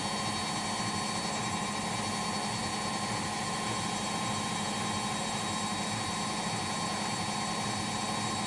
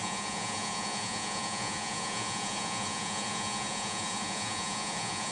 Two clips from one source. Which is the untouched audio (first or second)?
first